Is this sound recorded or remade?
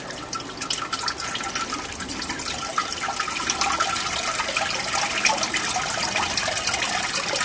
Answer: recorded